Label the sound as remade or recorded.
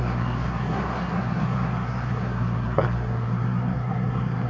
remade